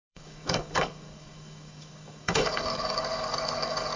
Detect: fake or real fake